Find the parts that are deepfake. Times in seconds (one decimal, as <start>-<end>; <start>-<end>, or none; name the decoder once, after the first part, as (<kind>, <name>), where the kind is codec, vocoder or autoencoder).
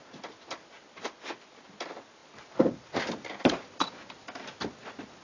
none